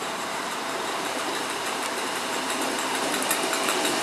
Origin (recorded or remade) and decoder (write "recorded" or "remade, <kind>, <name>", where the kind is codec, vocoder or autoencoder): remade, vocoder, BigVGAN v2